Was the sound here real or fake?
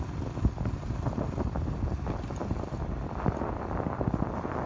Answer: real